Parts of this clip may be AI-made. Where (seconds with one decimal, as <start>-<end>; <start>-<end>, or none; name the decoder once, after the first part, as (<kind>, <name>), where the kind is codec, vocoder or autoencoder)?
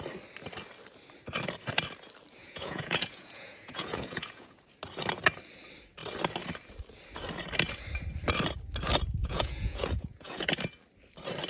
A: 2.4-4.6 (vocoder, Vocos); 9.2-10.5